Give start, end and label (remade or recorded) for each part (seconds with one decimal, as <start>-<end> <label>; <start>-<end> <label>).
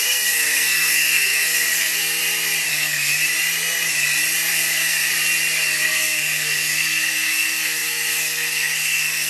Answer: 0.0-2.2 remade; 2.2-2.7 recorded; 2.7-3.1 remade; 3.1-4.5 recorded; 4.5-5.1 remade; 5.1-5.8 recorded; 5.8-9.3 remade